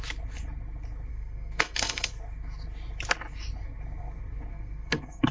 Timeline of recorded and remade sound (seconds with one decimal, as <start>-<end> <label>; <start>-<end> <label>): 0.0-1.1 recorded; 1.1-2.1 remade; 2.1-4.5 recorded; 4.5-5.3 remade